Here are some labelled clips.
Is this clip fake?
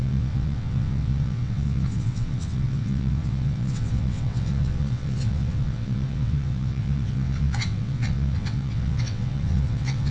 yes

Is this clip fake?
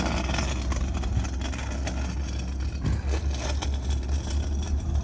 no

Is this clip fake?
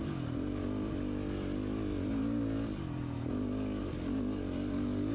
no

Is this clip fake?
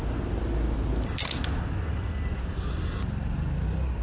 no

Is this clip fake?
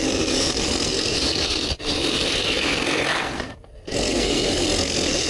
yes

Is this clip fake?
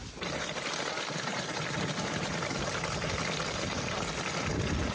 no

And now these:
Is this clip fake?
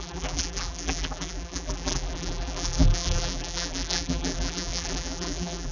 yes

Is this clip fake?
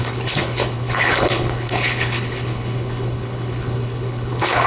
yes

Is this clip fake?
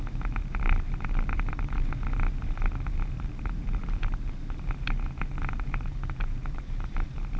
yes